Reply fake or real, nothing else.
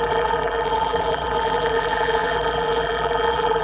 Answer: fake